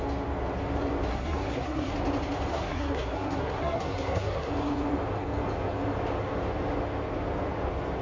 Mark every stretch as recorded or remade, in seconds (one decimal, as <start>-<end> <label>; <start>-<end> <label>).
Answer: 0.0-1.1 recorded; 1.1-1.9 remade; 1.9-2.5 recorded; 2.5-4.5 remade; 4.5-8.0 recorded